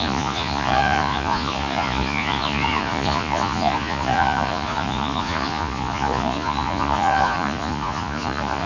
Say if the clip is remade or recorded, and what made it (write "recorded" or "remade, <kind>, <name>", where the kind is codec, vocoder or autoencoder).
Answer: remade, vocoder, Vocos